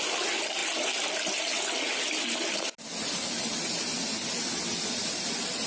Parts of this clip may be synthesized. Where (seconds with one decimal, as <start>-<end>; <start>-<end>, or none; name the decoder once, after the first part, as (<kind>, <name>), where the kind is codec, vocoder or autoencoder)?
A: none

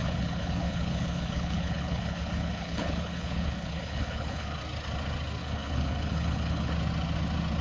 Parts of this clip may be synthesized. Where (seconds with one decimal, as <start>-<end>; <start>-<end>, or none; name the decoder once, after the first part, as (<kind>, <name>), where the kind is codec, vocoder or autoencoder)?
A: 0.0-4.6 (codec, HILCodec); 5.4-6.7

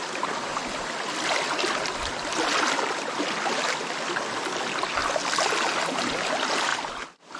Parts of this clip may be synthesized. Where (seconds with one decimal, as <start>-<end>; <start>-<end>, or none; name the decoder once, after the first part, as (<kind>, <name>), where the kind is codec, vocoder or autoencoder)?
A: none

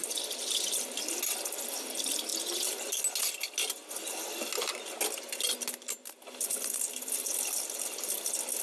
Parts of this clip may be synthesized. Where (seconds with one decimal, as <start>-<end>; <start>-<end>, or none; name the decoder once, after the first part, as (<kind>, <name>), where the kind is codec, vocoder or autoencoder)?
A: none

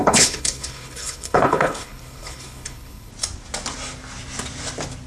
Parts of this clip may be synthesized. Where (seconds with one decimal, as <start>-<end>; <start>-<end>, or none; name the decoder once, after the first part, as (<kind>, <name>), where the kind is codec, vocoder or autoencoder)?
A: 0.0-3.1 (codec, HILCodec)